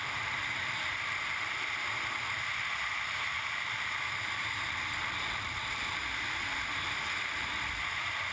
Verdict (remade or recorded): remade